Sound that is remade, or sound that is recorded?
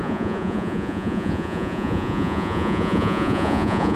remade